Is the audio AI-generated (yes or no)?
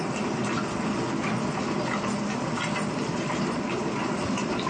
no